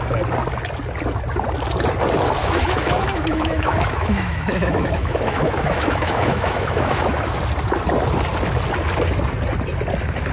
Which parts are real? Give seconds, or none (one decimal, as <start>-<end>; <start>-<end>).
0.0-2.4; 7.4-10.3